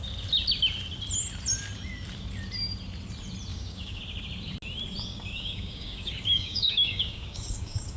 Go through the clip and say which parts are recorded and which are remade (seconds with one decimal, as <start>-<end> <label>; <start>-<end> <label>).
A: 0.0-3.5 recorded; 3.5-4.0 remade; 4.0-5.1 recorded; 5.1-8.0 remade

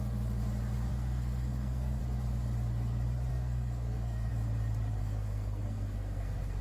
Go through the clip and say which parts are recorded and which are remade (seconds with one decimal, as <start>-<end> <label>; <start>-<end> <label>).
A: 0.0-0.9 recorded; 0.9-2.0 remade; 2.0-3.3 recorded; 3.3-4.3 remade; 4.3-5.0 recorded; 5.0-6.6 remade

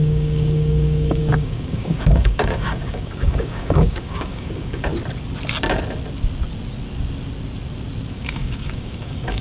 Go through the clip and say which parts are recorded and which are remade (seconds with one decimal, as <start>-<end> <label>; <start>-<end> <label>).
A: 0.0-4.9 remade; 4.9-8.1 recorded; 8.1-9.4 remade

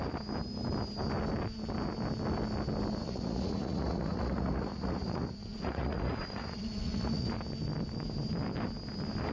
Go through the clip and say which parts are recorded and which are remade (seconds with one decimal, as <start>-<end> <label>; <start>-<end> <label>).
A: 0.0-3.0 recorded; 3.0-7.3 remade; 7.3-9.3 recorded

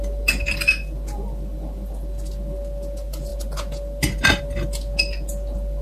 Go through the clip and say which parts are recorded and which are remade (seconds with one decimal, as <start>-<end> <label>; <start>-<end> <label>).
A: 0.0-5.8 recorded

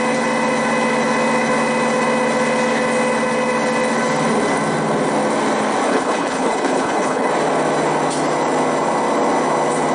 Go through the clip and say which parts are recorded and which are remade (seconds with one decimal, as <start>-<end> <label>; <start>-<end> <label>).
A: 0.0-5.9 recorded; 5.9-7.3 remade; 7.3-9.9 recorded

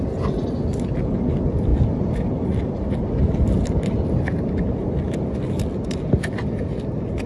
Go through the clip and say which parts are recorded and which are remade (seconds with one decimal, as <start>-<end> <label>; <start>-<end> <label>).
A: 0.0-7.3 recorded

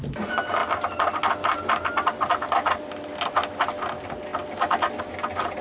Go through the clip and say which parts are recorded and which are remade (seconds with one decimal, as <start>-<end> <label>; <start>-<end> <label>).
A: 0.0-5.6 recorded